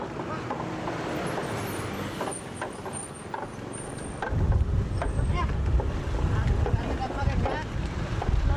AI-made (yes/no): no